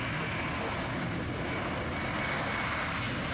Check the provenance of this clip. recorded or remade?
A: recorded